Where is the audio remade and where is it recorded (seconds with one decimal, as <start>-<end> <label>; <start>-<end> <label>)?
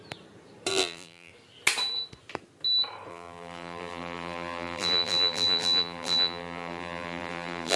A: 0.0-0.7 recorded; 0.7-1.3 remade; 1.3-3.1 recorded; 3.1-7.8 remade